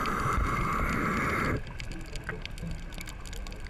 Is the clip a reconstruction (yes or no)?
no